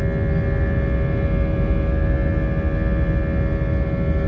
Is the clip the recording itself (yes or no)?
yes